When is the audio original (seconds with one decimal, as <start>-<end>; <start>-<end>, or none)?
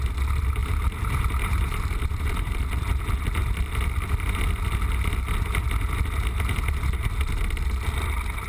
0.0-0.6; 2.5-8.5